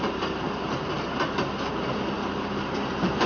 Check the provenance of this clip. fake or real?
real